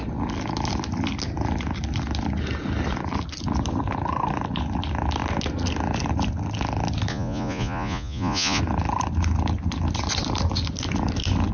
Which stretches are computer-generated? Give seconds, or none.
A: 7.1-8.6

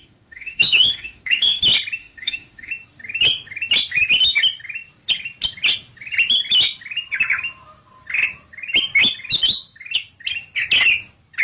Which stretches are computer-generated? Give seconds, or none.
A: 0.0-1.6; 2.0-2.7

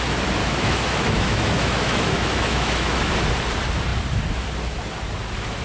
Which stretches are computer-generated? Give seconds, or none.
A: 0.4-3.1

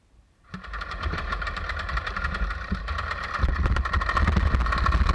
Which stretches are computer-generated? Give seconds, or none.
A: 0.0-3.1

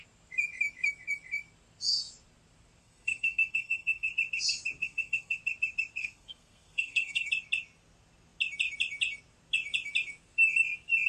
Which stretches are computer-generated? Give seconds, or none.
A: 2.8-4.1; 4.8-5.4; 6.0-7.3

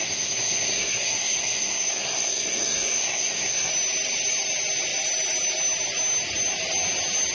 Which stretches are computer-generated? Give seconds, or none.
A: 0.0-3.7